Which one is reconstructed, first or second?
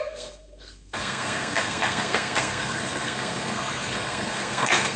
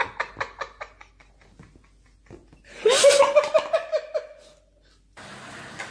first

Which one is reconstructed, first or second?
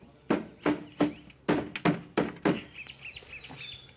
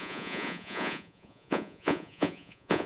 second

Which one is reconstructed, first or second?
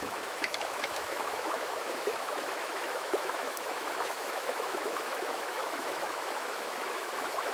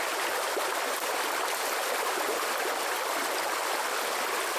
first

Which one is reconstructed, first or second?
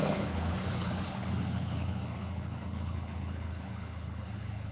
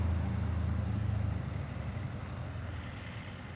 first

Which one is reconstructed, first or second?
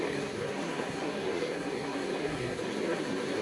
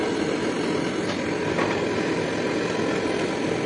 first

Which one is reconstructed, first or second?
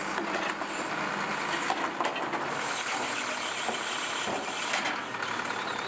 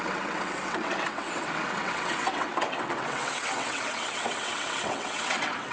second